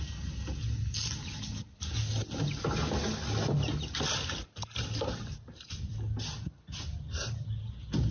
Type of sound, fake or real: real